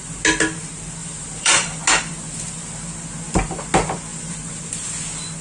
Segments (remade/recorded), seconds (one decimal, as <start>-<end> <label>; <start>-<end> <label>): 0.0-1.0 recorded; 1.0-1.8 remade; 1.8-4.1 recorded; 4.1-4.6 remade; 4.6-5.4 recorded